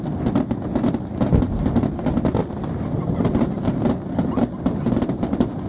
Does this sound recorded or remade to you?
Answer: recorded